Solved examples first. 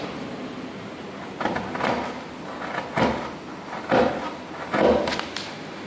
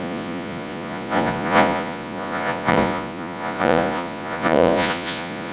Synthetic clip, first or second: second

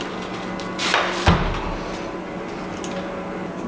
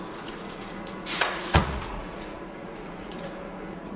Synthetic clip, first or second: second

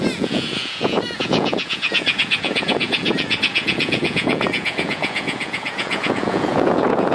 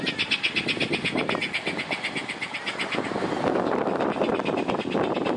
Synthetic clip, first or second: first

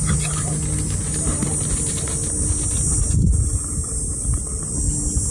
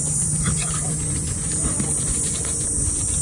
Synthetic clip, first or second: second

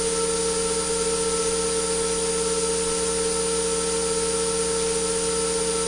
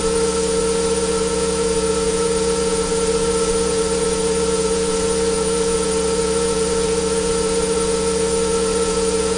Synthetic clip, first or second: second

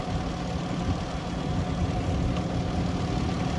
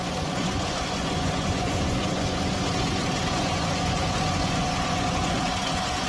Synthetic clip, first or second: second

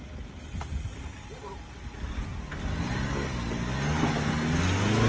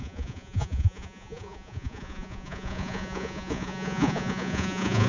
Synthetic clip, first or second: second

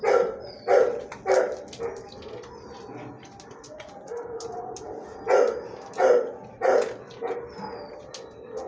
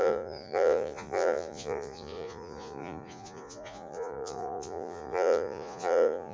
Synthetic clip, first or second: second